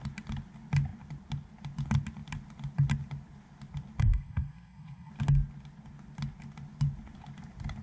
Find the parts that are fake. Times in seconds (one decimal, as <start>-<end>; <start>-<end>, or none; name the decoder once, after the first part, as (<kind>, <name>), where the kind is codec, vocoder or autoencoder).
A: 4.0-5.1 (codec, SNAC)